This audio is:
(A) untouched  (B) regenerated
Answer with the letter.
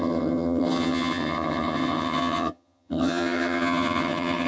B